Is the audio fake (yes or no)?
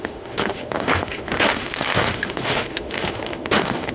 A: yes